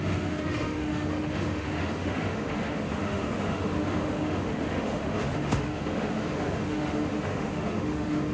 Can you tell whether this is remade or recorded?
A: remade